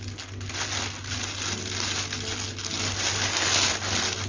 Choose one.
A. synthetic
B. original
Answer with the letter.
B